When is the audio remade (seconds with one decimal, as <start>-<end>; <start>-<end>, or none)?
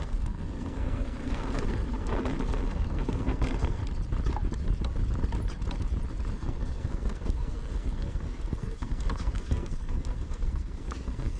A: 0.0-3.8; 6.3-11.4